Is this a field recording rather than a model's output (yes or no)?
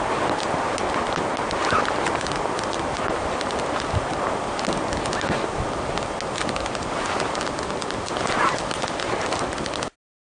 yes